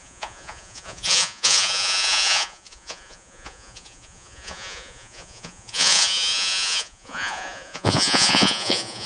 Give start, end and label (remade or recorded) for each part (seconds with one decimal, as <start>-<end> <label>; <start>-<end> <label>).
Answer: 0.0-9.1 remade